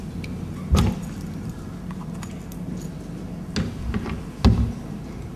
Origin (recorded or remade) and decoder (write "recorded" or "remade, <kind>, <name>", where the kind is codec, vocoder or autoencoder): recorded